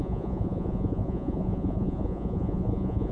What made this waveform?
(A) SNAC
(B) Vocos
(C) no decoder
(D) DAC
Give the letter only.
B